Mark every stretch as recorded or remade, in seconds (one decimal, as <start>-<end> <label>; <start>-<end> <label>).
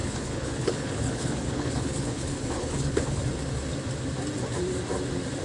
0.0-3.2 remade; 3.2-5.4 recorded